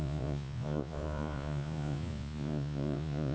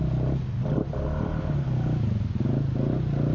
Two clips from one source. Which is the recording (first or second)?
second